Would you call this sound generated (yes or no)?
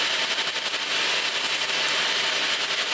no